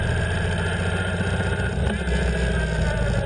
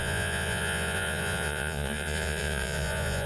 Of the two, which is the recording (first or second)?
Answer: first